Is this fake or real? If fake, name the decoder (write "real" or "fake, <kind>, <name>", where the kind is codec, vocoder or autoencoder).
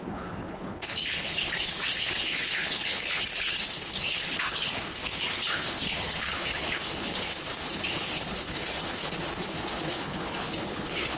fake, codec, HILCodec